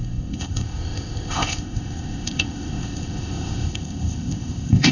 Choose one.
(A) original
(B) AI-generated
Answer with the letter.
B